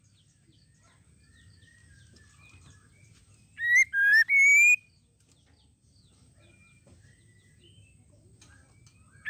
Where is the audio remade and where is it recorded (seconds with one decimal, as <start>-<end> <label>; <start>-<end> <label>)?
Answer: 0.0-9.3 recorded

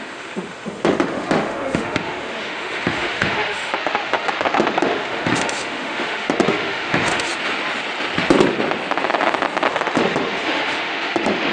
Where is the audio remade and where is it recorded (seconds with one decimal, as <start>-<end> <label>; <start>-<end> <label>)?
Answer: 0.0-7.3 remade; 7.3-9.7 recorded; 9.7-11.5 remade

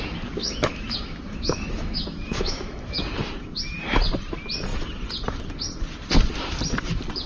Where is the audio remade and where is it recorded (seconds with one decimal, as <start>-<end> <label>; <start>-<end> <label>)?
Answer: 0.0-0.4 recorded; 0.4-3.0 remade; 3.0-7.3 recorded

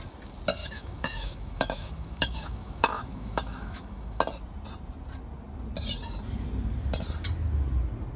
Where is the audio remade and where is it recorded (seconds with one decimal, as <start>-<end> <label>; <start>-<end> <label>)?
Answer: 0.0-0.6 recorded; 0.6-4.2 remade; 4.2-8.2 recorded

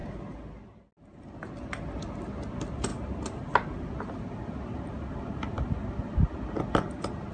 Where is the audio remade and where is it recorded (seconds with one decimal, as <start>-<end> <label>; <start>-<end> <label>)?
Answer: 0.0-7.3 recorded

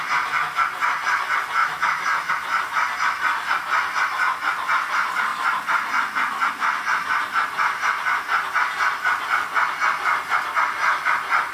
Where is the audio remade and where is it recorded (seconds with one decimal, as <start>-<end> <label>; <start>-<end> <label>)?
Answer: 0.0-1.6 recorded; 1.6-2.3 remade; 2.3-11.5 recorded